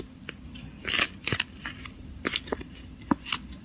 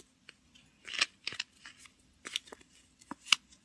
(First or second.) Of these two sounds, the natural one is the second